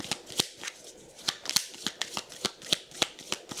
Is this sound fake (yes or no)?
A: no